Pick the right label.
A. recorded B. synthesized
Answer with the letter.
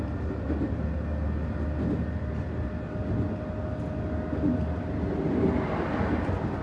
A